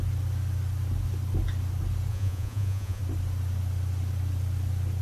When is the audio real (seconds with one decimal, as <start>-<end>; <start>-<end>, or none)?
0.0-2.1; 3.0-5.0